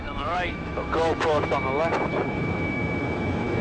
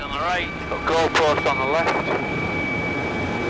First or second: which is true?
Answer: second